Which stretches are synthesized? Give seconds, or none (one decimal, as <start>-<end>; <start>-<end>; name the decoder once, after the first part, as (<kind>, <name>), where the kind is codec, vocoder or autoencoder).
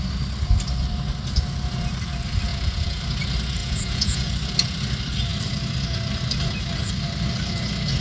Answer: 2.5-3.0 (vocoder, Vocos); 3.6-4.3